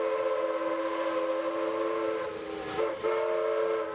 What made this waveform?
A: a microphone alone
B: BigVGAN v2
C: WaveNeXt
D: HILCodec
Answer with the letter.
A